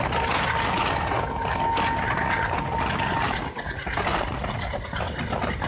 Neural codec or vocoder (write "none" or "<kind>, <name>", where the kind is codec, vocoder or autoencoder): none